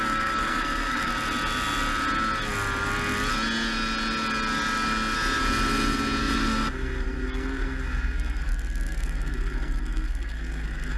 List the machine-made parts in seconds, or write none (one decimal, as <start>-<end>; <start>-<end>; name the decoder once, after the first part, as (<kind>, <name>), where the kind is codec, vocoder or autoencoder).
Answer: 0.0-1.1 (codec, SNAC); 6.2-11.0